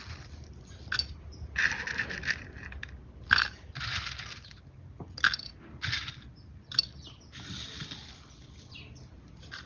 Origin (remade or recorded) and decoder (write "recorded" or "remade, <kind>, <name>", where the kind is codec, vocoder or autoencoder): recorded